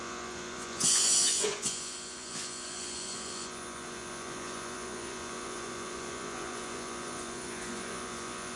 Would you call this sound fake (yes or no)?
yes